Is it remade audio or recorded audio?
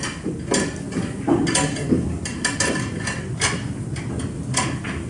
recorded